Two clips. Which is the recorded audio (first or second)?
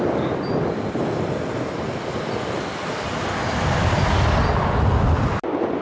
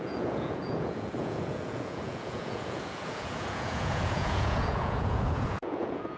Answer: first